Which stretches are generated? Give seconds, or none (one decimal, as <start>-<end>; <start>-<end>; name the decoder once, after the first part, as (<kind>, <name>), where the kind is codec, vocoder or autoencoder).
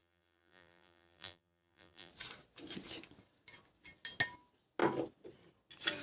0.0-2.1 (vocoder, BigVGAN v2)